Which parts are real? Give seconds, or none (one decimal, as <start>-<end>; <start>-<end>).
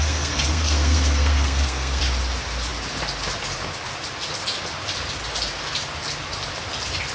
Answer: 2.0-7.1